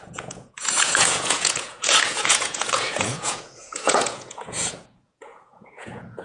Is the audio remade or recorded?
remade